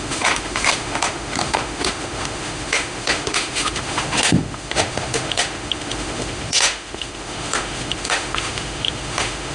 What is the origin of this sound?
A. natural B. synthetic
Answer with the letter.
B